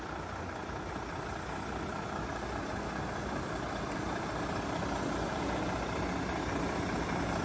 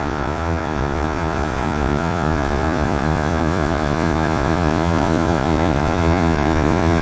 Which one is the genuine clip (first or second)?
first